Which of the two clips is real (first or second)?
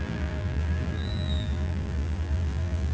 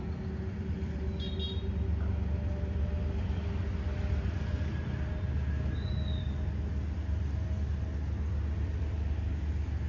second